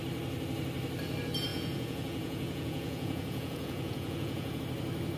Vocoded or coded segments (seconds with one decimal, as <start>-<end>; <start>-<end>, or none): 1.5-4.6